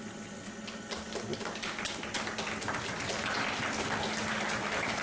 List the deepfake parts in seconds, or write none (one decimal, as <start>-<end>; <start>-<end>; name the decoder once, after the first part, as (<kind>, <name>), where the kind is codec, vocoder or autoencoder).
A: none